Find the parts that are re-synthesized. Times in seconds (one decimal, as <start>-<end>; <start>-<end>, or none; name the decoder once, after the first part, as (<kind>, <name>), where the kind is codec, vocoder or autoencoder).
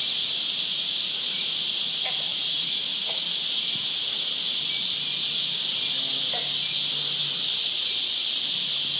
0.7-1.5 (vocoder, Vocos); 2.3-4.3